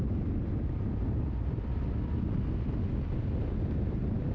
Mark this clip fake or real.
real